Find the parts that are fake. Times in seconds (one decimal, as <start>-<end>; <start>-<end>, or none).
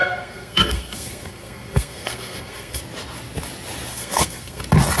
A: 0.0-2.8; 3.9-4.6